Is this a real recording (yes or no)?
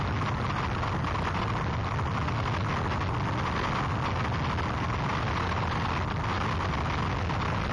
yes